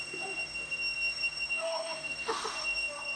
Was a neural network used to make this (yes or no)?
yes